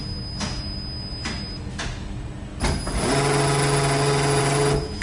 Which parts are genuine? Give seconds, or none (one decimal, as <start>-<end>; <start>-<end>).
0.0-5.0